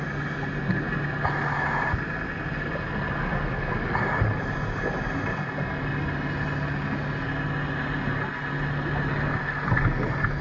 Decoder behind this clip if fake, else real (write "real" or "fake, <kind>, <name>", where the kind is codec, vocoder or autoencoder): real